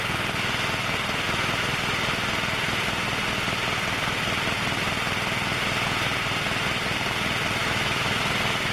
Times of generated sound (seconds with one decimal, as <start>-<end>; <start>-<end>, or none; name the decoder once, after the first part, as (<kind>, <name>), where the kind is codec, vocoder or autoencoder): 7.6-8.2 (autoencoder, DAC-VAE)